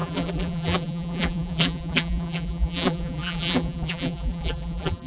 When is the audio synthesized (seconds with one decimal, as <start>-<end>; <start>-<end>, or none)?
0.0-5.1